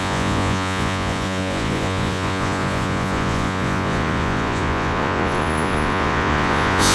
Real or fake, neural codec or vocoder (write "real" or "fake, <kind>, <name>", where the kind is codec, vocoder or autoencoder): fake, vocoder, Vocos